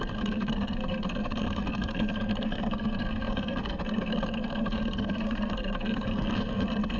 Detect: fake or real fake